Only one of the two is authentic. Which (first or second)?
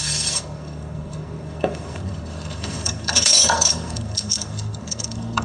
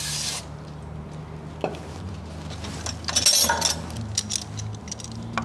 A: second